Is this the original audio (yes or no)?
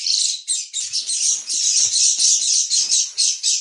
yes